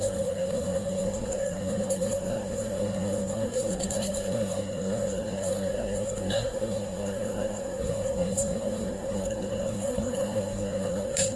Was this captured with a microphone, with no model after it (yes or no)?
no